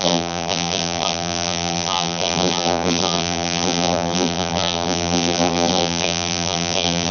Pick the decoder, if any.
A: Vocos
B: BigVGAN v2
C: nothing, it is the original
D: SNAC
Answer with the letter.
B